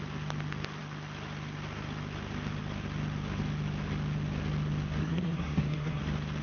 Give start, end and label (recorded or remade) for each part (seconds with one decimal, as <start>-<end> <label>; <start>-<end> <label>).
0.0-5.0 recorded; 5.0-6.0 remade; 6.0-6.4 recorded